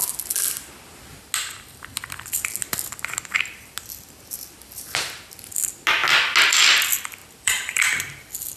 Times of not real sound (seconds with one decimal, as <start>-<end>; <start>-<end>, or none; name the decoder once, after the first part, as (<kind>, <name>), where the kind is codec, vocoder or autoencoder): 7.2-8.6 (vocoder, BigVGAN v2)